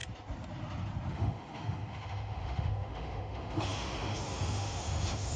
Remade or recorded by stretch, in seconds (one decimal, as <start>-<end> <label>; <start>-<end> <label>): 0.0-1.1 recorded; 1.1-5.4 remade